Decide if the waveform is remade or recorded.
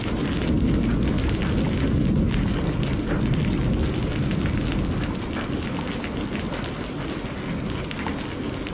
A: recorded